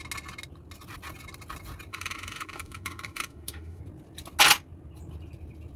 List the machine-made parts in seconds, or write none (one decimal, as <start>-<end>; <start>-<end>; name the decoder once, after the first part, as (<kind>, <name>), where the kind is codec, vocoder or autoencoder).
1.9-3.8 (autoencoder, DAC-VAE)